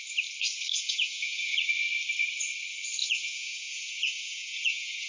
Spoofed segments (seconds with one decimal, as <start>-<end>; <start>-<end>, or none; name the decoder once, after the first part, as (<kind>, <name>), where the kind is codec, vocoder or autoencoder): 0.7-1.6 (vocoder, Vocos); 3.0-5.1